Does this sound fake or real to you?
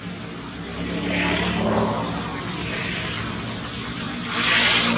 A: real